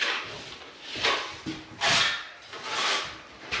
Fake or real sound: real